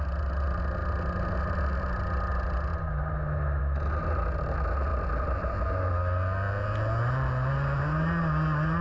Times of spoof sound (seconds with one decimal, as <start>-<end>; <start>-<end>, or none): none